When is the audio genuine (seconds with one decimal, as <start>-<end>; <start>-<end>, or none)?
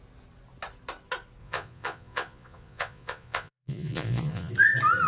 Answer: 0.0-1.4; 4.5-5.1